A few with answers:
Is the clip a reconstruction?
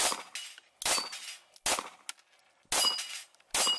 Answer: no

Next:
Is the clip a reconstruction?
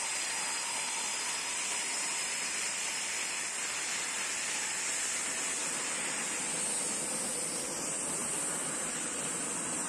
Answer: no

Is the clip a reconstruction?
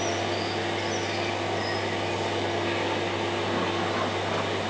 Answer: no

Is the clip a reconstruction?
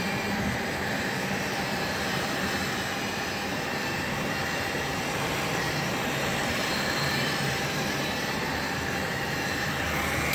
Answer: yes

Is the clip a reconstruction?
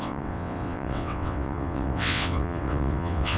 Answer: yes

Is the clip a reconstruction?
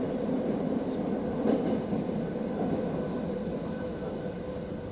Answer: no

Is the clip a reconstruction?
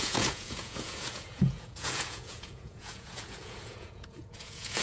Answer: yes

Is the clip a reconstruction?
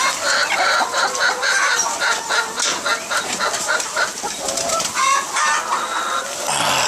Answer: no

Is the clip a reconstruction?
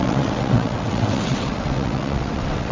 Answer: yes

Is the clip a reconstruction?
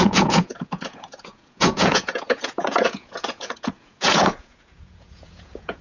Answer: yes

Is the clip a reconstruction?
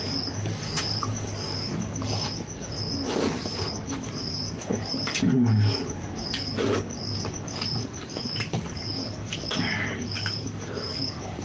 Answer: yes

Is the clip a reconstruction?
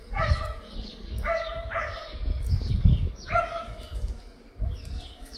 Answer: yes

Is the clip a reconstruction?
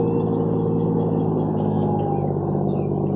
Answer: no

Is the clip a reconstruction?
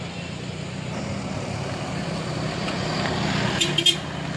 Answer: no